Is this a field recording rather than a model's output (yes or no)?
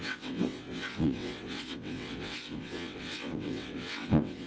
no